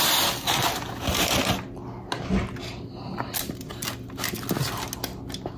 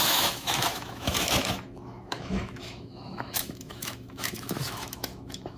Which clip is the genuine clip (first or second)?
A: first